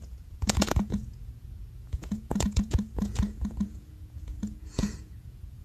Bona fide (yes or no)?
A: no